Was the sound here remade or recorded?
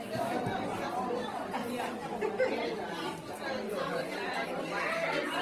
recorded